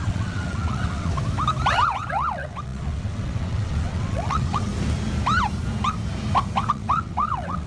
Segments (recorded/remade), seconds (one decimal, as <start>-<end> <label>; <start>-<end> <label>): 0.0-1.1 remade; 1.1-1.7 recorded; 1.7-4.7 remade; 4.7-6.7 recorded; 6.7-7.7 remade